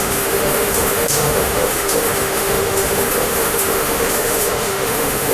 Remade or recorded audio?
remade